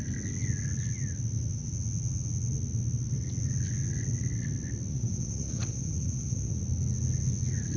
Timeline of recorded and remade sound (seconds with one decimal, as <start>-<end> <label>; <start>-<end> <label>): 0.0-4.9 recorded; 4.9-6.6 remade; 6.6-7.8 recorded